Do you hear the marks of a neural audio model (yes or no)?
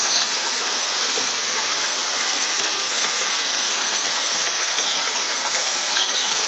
yes